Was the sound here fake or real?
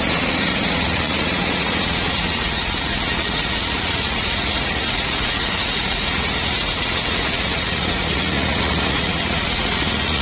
fake